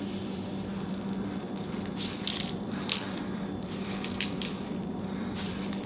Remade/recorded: remade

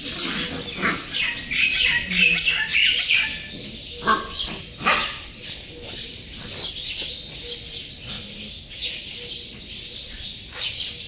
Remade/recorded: recorded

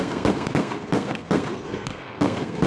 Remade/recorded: remade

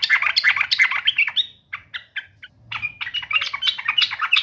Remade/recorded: recorded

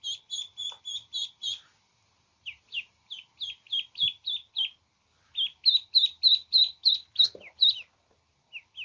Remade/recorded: recorded